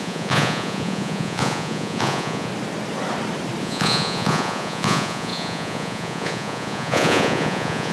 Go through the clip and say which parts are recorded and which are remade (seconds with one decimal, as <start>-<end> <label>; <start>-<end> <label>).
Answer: 0.0-2.5 remade; 2.5-3.6 recorded; 3.6-7.9 remade